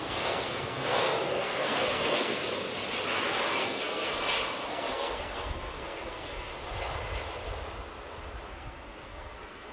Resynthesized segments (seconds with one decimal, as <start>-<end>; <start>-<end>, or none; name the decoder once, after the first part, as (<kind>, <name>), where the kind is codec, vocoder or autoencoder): 0.0-2.4 (codec, SNAC); 3.2-4.1; 4.7-6.5; 8.5-9.7